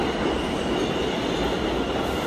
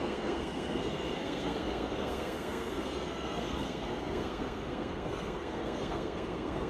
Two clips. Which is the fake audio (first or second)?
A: second